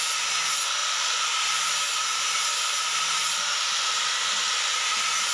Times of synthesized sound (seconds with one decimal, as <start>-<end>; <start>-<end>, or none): 0.8-4.0